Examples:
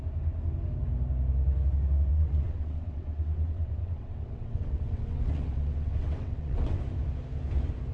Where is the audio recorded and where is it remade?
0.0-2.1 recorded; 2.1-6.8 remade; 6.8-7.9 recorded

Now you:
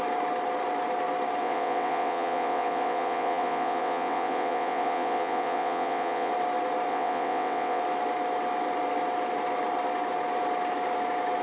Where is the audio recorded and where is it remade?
0.0-1.4 recorded; 1.4-6.3 remade; 6.3-6.9 recorded; 6.9-7.8 remade; 7.8-11.4 recorded

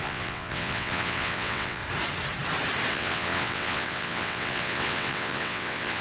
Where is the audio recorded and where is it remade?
0.0-1.8 remade; 1.8-2.9 recorded; 2.9-6.0 remade

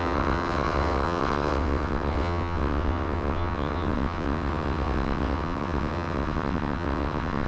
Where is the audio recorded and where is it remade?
0.0-7.5 remade

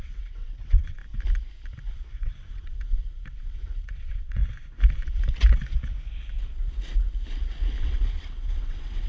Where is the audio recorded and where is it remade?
0.0-1.0 remade; 1.0-2.1 recorded; 2.1-4.4 remade; 4.4-7.8 recorded; 7.8-9.1 remade